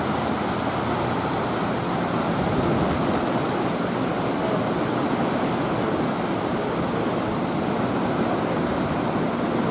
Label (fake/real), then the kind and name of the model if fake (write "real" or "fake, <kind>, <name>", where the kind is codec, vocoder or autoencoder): real